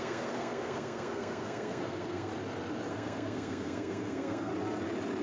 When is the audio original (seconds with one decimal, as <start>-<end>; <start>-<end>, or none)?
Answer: 2.3-2.9; 4.5-5.2